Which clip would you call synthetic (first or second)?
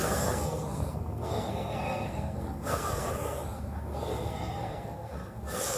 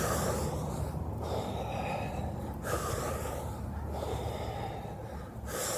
first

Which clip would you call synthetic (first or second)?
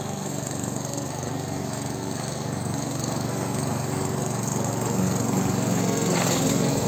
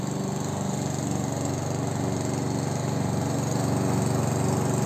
first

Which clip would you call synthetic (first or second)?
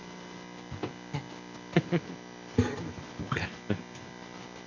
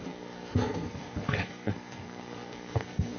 second